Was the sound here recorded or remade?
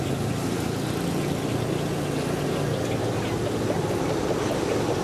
recorded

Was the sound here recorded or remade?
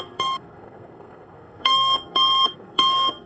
remade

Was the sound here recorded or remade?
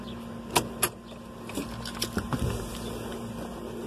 recorded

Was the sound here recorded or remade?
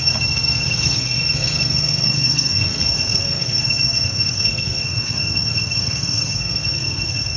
remade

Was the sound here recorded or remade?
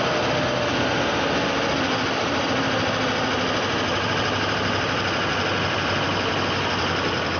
recorded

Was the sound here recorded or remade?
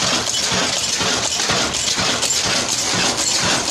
recorded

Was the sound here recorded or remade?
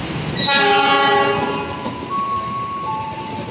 recorded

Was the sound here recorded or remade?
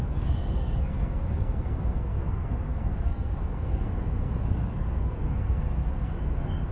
remade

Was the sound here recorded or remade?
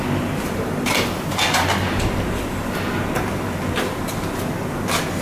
recorded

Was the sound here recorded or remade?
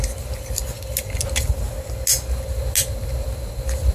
recorded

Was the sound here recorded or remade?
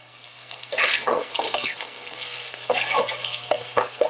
remade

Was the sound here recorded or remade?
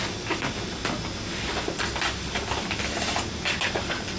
recorded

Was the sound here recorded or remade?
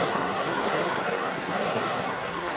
remade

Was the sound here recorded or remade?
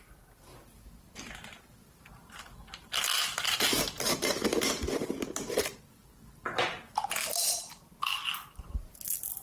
recorded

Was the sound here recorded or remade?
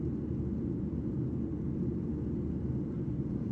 recorded